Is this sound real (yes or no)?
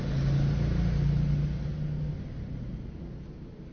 yes